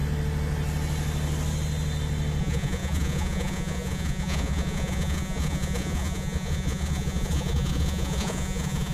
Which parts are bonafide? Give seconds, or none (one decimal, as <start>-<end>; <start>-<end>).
0.0-2.4